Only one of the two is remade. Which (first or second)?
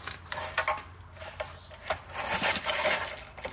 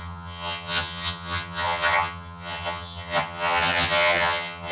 second